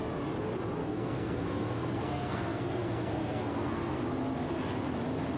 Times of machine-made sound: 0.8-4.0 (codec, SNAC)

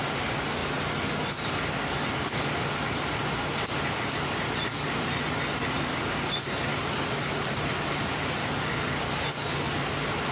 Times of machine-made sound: none

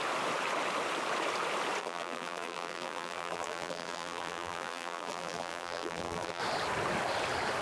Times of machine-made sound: 1.8-6.4 (vocoder, BigVGAN v2)

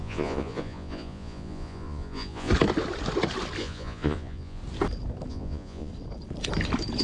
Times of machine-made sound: 0.0-2.5 (vocoder, Vocos); 3.6-4.6; 5.3-5.9

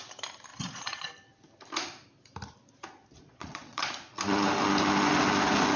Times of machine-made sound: 0.5-1.1 (vocoder, Vocos); 3.0-3.9

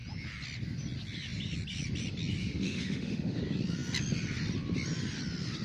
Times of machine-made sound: 2.4-3.4 (autoencoder, DAC-VAE)

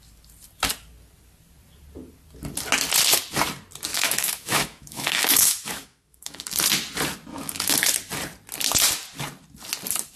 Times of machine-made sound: 3.9-6.6 (autoencoder, DAC-VAE); 7.3-7.9